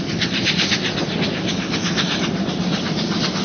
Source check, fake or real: real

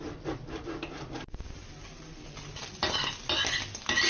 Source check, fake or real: real